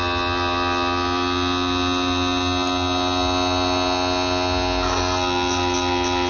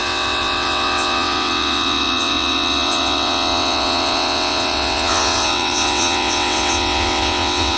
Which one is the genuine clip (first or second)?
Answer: first